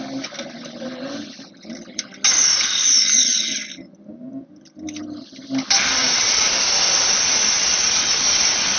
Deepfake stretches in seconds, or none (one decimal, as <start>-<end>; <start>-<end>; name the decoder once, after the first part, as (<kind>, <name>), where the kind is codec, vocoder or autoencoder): 6.0-6.5 (vocoder, BigVGAN v2)